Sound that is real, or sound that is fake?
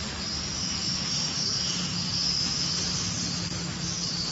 real